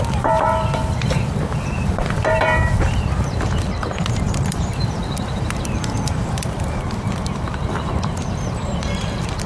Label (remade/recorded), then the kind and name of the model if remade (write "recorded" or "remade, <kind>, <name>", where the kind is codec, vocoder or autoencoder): remade, vocoder, BigVGAN v2